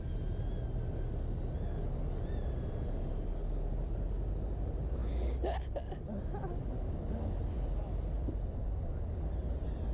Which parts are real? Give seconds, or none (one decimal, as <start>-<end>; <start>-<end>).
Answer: 0.0-9.9